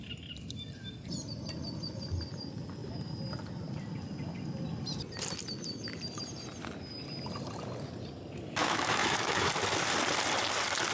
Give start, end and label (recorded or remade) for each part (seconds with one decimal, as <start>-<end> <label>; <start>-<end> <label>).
0.0-8.6 recorded; 8.6-9.5 remade; 9.5-10.9 recorded